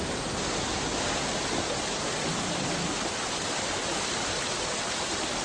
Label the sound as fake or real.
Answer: real